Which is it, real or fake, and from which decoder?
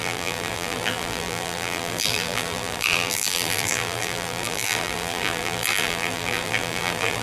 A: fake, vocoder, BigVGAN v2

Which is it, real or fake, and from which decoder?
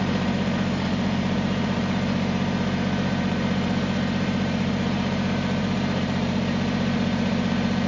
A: fake, vocoder, BigVGAN v2